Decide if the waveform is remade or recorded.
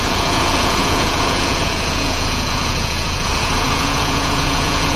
remade